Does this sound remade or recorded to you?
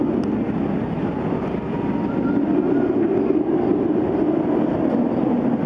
recorded